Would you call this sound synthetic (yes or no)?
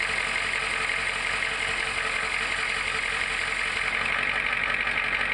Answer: no